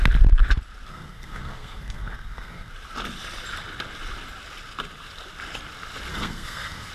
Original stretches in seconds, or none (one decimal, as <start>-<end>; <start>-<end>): 0.0-0.9; 2.7-6.1